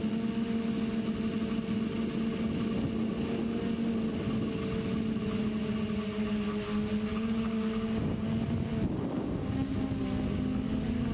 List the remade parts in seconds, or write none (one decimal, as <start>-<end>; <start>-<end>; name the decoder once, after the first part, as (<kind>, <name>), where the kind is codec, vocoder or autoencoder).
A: 7.1-8.2 (codec, DAC); 8.7-10.0